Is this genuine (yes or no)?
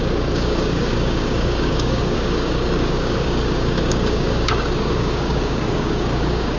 no